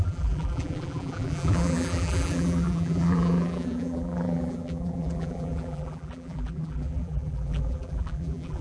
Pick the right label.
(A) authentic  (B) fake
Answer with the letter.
B